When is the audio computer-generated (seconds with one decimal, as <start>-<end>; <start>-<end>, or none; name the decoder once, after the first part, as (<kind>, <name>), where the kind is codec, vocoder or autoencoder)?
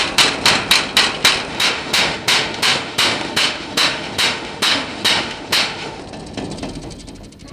1.5-6.0 (autoencoder, DAC-VAE)